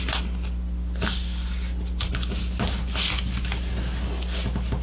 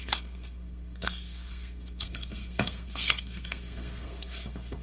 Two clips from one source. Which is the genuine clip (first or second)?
first